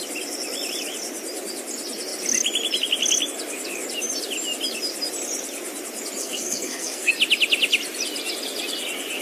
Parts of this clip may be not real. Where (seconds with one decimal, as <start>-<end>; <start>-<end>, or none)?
6.2-7.1